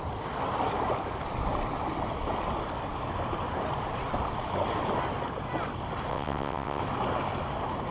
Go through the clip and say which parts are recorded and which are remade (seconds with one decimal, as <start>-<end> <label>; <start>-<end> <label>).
0.0-6.1 recorded; 6.1-6.8 remade; 6.8-7.9 recorded